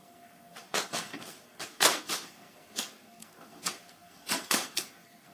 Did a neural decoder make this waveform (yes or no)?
yes